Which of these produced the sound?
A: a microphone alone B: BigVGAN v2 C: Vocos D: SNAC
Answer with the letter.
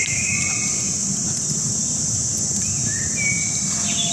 A